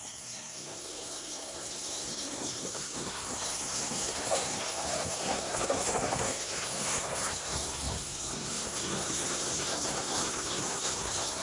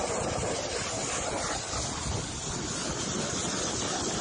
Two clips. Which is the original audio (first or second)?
second